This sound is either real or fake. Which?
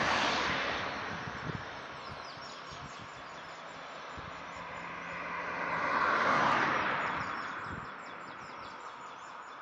real